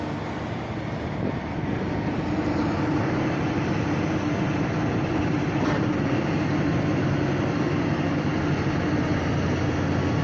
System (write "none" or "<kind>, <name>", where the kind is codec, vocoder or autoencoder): none